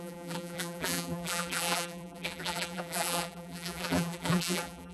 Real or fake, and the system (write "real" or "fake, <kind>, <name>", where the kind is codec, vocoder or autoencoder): fake, vocoder, BigVGAN v2